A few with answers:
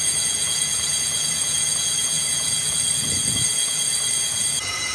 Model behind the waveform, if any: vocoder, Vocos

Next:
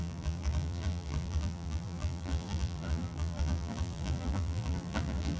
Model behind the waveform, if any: vocoder, BigVGAN v2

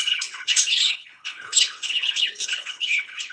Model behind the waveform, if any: codec, HILCodec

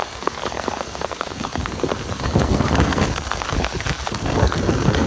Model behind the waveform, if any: codec, SNAC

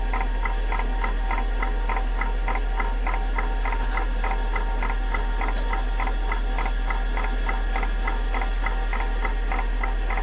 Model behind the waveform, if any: none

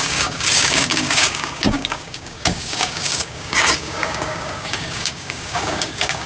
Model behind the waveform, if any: codec, DAC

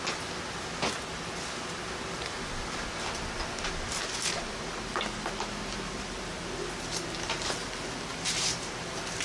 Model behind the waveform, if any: none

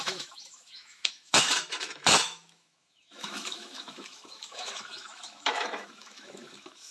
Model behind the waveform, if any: autoencoder, DAC-VAE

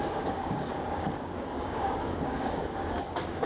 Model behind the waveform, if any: codec, DAC